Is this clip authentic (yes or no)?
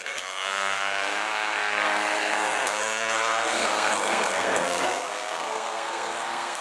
no